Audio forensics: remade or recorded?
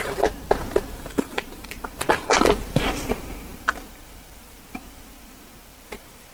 remade